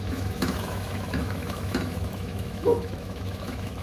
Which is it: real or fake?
fake